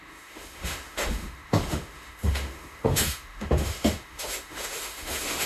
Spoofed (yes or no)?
yes